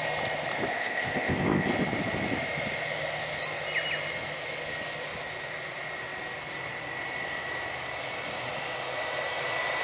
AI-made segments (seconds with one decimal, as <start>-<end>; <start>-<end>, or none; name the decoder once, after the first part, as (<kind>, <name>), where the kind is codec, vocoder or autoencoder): 0.7-1.7 (codec, ZipCodec)